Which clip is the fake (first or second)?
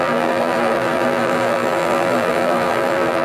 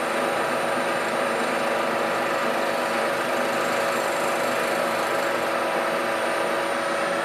first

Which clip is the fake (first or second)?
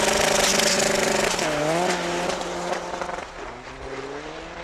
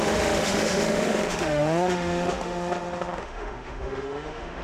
second